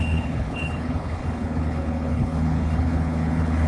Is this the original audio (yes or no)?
no